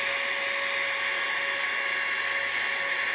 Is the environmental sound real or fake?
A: real